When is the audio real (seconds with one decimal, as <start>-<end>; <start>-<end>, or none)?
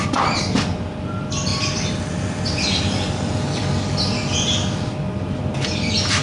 0.0-6.2